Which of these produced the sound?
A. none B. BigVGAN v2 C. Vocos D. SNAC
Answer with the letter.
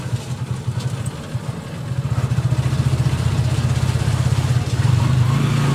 A